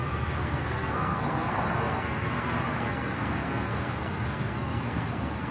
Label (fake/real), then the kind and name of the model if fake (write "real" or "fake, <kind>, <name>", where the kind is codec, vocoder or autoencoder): fake, codec, SNAC